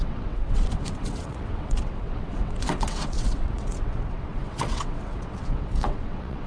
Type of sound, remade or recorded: remade